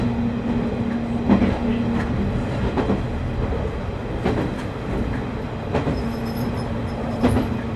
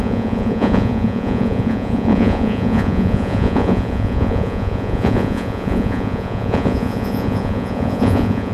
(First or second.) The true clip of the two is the first